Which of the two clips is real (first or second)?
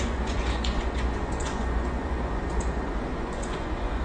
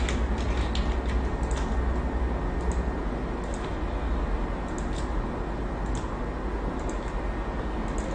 second